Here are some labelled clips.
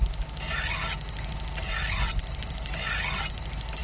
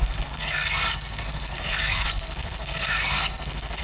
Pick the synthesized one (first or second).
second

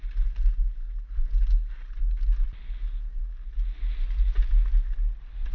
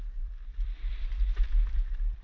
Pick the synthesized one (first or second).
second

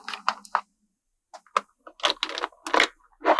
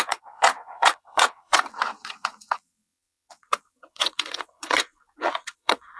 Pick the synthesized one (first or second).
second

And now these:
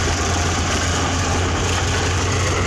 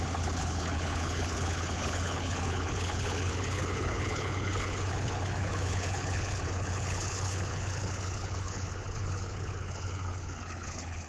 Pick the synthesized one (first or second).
second